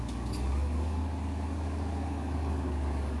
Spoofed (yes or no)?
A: yes